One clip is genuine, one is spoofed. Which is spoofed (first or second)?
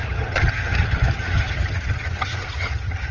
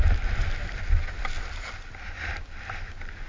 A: first